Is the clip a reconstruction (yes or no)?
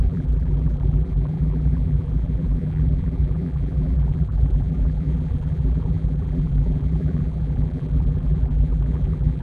yes